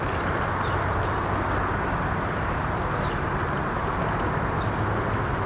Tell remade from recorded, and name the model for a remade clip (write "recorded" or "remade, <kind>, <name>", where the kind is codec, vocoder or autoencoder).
recorded